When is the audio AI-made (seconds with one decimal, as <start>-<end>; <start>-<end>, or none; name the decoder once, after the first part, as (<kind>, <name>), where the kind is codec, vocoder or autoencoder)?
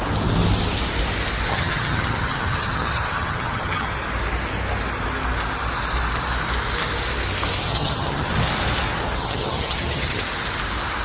1.5-3.9 (vocoder, HiFi-GAN); 7.7-8.3; 9.2-10.2